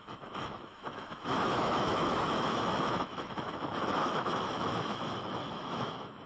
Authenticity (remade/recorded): remade